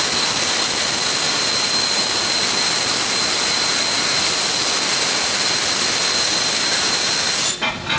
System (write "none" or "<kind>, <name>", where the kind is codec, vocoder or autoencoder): none